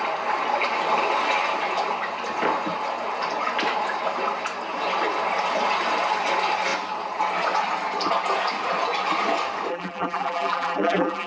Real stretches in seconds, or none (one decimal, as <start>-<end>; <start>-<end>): 0.0-9.7

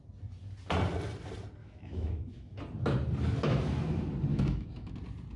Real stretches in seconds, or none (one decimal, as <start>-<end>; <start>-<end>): 0.0-1.6; 2.6-4.3; 4.9-5.4

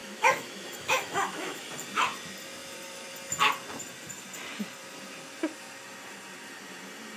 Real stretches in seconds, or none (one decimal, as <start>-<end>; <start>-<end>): 1.7-7.2

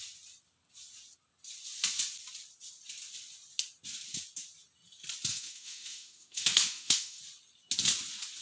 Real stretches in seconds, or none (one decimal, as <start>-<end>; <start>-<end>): 0.0-5.3; 7.2-8.4

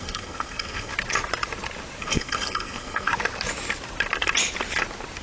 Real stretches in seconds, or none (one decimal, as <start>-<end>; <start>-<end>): 0.9-2.0; 3.1-5.2